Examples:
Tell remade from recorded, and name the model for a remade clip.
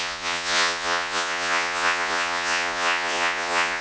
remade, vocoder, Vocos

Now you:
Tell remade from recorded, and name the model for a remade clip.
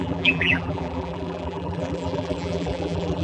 remade, vocoder, BigVGAN v2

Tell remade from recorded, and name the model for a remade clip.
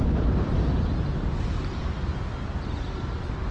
recorded